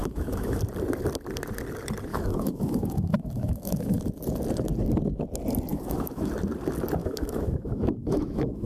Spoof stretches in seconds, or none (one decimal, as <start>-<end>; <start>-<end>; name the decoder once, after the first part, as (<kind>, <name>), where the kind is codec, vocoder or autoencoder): 0.0-0.6 (autoencoder, DAC-VAE); 2.1-4.0; 5.7-6.3; 7.0-8.7